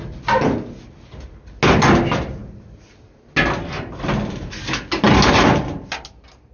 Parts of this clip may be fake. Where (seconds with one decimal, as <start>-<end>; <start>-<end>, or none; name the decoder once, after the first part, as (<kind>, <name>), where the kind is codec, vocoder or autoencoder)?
none